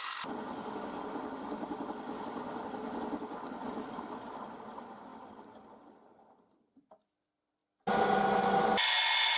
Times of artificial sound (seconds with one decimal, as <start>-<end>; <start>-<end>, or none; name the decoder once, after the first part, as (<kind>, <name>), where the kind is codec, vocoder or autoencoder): 3.6-4.3 (vocoder, BigVGAN v2); 5.1-5.7